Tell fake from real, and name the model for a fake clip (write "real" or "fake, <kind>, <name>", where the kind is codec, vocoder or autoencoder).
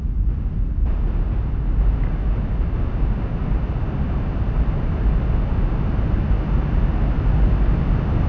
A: real